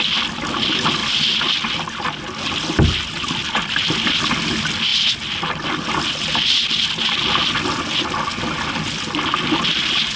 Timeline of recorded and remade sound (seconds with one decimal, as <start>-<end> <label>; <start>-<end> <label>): 0.0-1.0 recorded; 1.0-2.2 remade; 2.2-3.4 recorded; 3.4-4.5 remade; 4.5-10.2 recorded